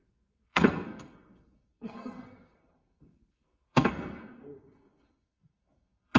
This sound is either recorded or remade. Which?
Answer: remade